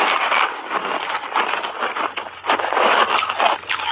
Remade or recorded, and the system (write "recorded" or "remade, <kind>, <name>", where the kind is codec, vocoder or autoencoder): recorded